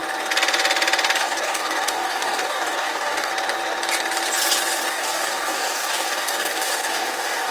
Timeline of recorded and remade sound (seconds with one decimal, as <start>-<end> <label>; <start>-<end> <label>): 0.0-1.2 recorded; 1.2-3.3 remade; 3.3-4.9 recorded; 4.9-7.5 remade